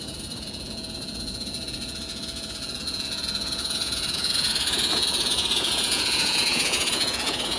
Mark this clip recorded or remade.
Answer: remade